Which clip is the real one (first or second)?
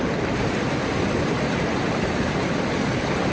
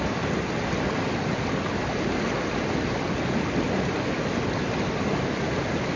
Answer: second